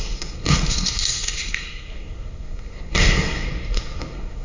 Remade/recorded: remade